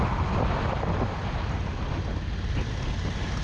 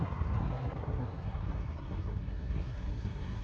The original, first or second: first